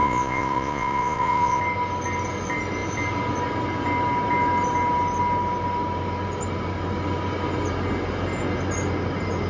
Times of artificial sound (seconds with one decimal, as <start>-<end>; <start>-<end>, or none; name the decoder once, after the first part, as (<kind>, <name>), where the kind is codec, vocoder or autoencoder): 0.0-1.6 (vocoder, Vocos)